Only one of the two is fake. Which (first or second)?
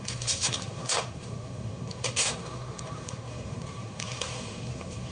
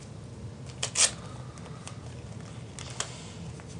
first